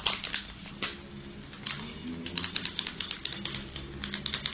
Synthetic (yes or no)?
no